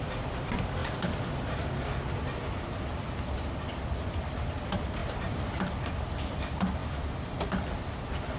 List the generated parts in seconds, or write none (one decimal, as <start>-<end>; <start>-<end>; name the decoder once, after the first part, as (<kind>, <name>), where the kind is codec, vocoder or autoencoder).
0.8-1.7 (vocoder, BigVGAN v2); 5.0-5.6